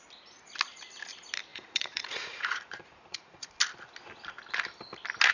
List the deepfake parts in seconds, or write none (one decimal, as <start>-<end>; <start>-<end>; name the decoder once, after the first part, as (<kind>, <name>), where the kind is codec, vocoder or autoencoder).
1.5-3.5 (vocoder, Vocos)